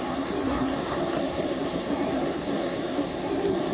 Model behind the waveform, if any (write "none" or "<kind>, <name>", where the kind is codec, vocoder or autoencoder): codec, SNAC